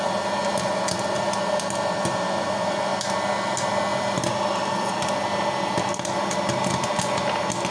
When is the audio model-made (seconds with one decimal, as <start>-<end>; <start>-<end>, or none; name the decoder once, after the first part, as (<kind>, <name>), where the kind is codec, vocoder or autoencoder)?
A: none